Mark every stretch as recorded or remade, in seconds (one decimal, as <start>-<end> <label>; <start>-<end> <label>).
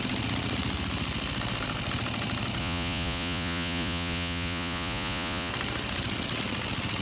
0.0-2.6 recorded; 2.6-5.5 remade; 5.5-7.0 recorded